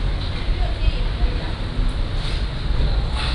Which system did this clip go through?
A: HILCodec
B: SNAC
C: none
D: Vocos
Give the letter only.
C